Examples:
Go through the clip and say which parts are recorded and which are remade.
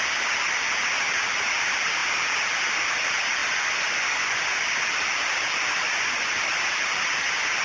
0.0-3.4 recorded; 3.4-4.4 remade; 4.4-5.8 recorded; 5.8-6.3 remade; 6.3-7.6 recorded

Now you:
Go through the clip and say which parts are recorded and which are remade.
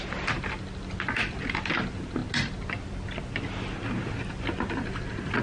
0.0-5.4 recorded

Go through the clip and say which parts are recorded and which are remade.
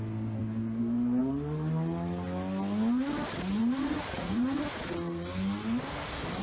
0.0-3.6 recorded; 3.6-4.6 remade; 4.6-6.4 recorded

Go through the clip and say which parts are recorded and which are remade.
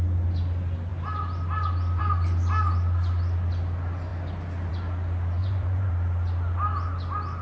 0.0-5.4 recorded; 5.4-5.9 remade; 5.9-7.4 recorded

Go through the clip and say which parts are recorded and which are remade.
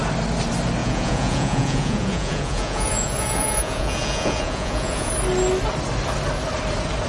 0.0-0.8 recorded; 0.8-5.1 remade; 5.1-7.1 recorded